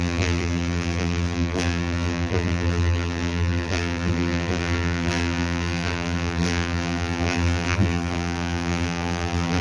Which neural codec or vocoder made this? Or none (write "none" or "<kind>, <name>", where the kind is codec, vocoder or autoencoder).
vocoder, BigVGAN v2